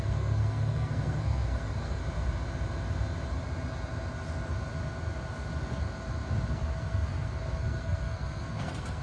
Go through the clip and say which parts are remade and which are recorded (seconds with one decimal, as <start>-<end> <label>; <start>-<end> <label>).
0.0-2.0 remade; 2.0-6.5 recorded; 6.5-9.0 remade